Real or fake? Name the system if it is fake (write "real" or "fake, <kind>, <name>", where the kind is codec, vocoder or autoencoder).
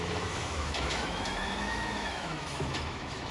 fake, autoencoder, DAC-VAE